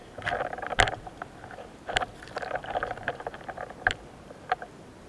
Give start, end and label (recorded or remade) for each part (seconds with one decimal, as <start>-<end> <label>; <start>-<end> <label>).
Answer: 0.0-5.1 recorded